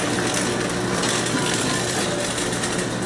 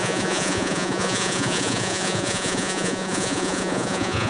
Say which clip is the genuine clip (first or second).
first